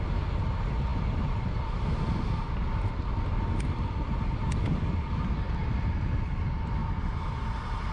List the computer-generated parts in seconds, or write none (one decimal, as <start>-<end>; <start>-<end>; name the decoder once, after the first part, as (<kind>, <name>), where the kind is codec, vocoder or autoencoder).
none